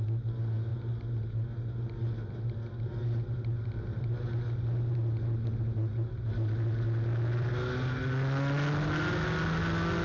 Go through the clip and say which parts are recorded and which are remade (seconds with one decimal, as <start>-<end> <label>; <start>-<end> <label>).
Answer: 0.0-10.0 recorded